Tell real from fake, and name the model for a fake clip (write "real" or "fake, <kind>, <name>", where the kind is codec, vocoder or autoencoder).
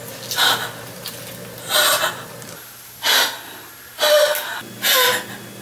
real